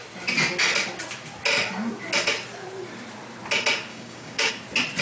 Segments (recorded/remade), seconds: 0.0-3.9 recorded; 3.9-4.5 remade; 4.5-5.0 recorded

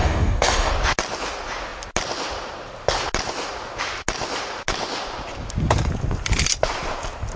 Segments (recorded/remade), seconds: 0.0-0.7 remade; 0.7-7.4 recorded

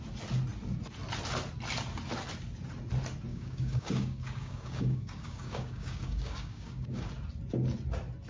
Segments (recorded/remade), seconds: 0.0-3.3 recorded; 3.3-7.1 remade; 7.1-8.3 recorded